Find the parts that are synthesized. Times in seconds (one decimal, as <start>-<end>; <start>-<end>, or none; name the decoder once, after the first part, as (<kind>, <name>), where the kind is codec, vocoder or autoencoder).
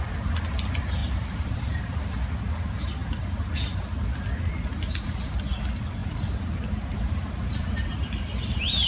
1.0-1.8 (vocoder, BigVGAN v2); 6.0-8.1